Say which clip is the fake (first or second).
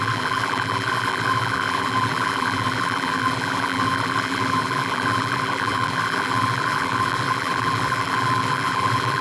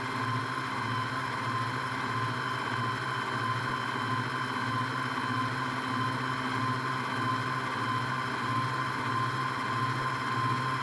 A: first